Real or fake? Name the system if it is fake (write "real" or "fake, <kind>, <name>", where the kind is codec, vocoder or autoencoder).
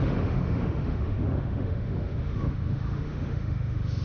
fake, autoencoder, DAC-VAE